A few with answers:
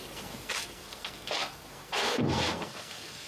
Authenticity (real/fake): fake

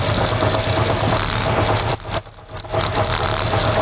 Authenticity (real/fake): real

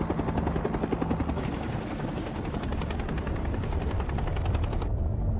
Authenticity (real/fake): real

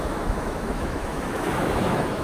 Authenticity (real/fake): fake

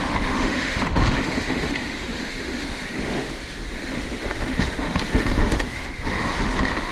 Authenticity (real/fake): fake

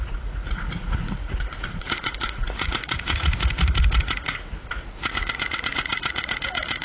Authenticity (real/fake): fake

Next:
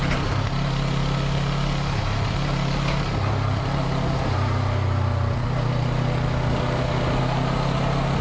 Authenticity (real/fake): real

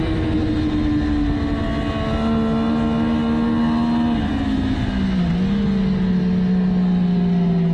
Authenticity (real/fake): real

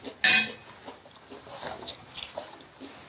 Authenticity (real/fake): real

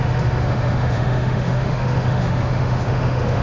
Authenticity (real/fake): fake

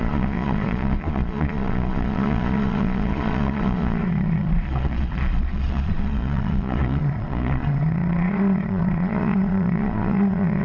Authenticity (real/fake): fake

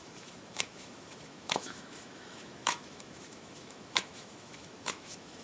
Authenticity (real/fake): fake